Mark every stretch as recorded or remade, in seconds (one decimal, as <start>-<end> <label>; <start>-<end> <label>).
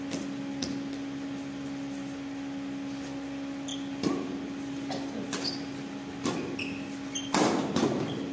0.0-8.3 recorded